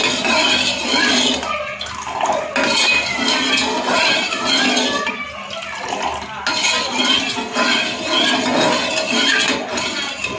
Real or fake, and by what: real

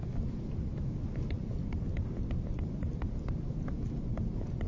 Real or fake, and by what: real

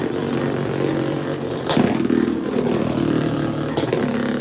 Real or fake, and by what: real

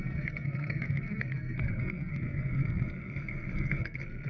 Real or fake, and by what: fake, codec, SNAC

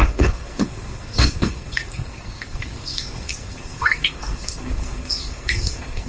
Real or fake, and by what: fake, codec, SNAC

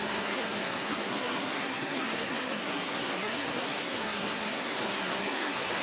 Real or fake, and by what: fake, codec, SNAC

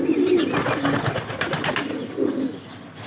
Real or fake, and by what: real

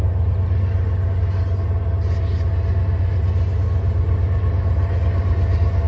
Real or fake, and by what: real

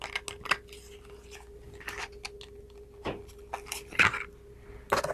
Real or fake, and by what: real